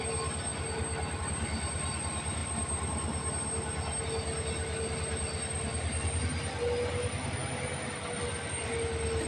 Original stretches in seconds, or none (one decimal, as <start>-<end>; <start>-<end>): 0.0-9.3